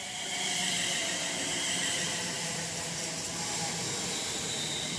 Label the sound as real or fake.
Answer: fake